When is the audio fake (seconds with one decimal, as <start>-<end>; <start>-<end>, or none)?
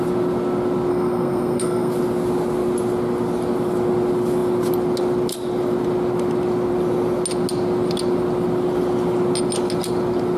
0.9-1.9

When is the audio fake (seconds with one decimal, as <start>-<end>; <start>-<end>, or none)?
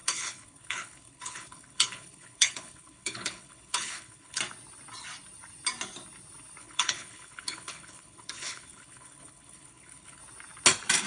0.0-4.4; 6.6-10.2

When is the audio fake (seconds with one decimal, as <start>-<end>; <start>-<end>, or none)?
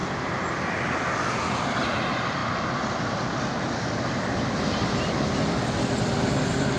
0.0-6.8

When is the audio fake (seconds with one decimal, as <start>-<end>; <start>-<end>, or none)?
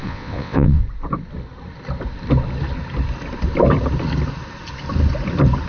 0.0-0.8